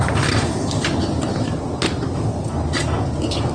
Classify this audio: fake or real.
real